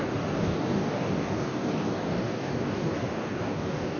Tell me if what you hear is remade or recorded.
remade